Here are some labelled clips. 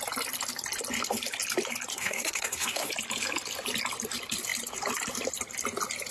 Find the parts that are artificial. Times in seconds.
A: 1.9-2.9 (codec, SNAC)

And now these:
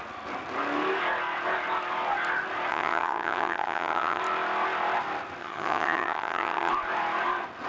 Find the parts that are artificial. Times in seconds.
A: 2.7-4.2 (vocoder, HiFi-GAN); 5.4-6.7

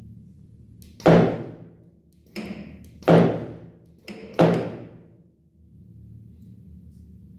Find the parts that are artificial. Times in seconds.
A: 4.2-5.8 (autoencoder, DAC-VAE)

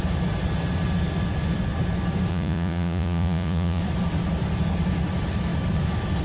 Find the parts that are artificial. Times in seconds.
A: 2.3-3.8 (vocoder, Vocos)

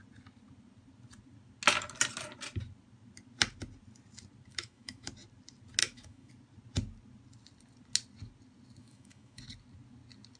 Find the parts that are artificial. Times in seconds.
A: 4.5-5.1 (autoencoder, DAC-VAE); 5.8-6.3; 8.8-9.4

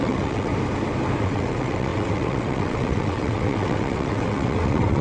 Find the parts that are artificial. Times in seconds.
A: 0.0-0.5 (vocoder, WaveNeXt); 1.2-5.0

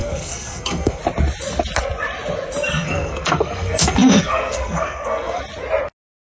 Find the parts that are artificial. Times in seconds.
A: 0.0-1.0 (codec, SNAC); 2.7-5.4

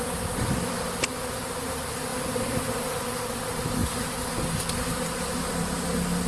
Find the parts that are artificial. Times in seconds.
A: 2.1-2.6 (vocoder, BigVGAN v2)